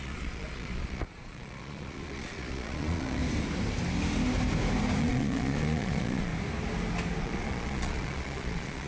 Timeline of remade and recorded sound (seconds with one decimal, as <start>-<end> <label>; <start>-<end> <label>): 0.0-3.2 remade; 3.2-5.0 recorded; 5.0-6.3 remade; 6.3-7.2 recorded; 7.2-8.9 remade